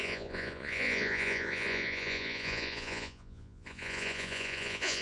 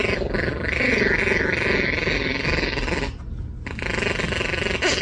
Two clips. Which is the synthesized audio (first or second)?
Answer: first